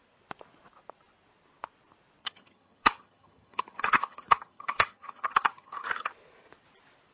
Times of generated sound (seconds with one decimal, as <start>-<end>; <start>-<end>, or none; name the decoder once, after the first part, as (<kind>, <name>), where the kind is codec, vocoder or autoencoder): 2.2-6.1 (vocoder, HiFi-GAN)

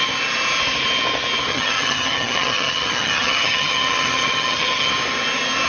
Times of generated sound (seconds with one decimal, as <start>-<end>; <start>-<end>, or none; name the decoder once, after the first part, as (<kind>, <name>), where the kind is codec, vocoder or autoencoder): 1.5-4.9 (vocoder, HiFi-GAN)

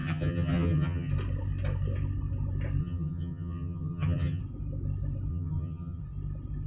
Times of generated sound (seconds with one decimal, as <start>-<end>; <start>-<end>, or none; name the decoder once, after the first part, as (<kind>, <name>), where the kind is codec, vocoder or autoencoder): 0.0-1.1 (vocoder, HiFi-GAN); 2.8-4.4; 5.3-6.0